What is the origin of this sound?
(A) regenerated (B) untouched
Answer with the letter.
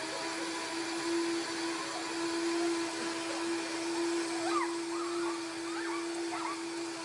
B